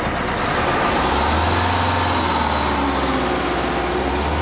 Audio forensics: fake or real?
real